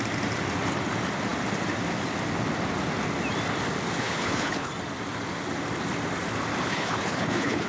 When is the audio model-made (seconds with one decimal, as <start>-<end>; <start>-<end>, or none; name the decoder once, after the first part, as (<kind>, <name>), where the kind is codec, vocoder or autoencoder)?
4.0-4.7 (codec, HILCodec); 6.7-7.7